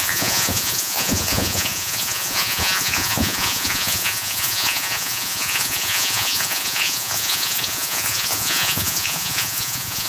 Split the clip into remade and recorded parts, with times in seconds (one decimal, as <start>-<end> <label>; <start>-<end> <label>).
0.0-10.1 remade